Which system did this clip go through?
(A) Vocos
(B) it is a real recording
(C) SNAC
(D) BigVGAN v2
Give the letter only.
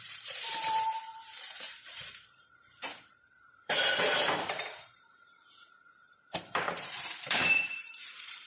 D